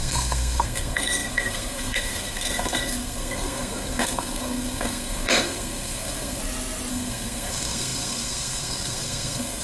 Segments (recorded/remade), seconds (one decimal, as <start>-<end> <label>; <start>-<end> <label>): 0.0-6.4 remade; 6.4-6.9 recorded; 6.9-9.6 remade